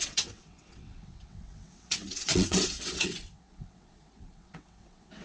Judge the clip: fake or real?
fake